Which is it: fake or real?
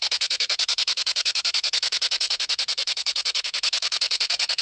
fake